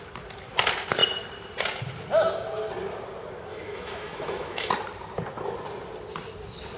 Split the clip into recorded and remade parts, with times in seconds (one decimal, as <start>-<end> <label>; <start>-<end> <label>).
0.0-3.5 recorded; 3.5-4.7 remade; 4.7-6.8 recorded